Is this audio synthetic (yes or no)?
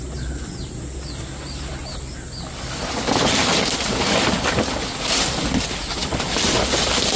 no